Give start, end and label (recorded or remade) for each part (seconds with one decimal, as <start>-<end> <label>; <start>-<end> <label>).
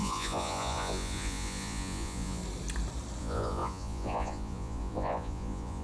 0.0-2.4 remade; 2.4-3.2 recorded; 3.2-5.8 remade